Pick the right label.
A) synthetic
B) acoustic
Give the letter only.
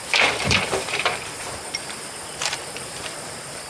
A